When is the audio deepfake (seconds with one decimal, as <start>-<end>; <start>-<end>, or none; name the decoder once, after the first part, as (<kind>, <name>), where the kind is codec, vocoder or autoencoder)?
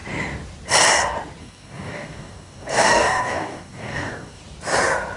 1.4-4.4 (codec, DAC)